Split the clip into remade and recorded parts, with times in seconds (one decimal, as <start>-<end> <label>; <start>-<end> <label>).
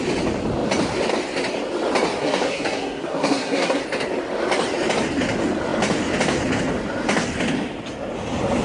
0.0-2.2 recorded; 2.2-3.8 remade; 3.8-8.6 recorded